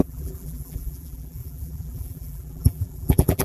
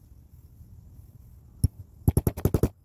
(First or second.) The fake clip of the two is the first